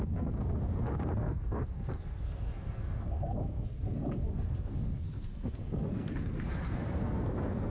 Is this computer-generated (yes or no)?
yes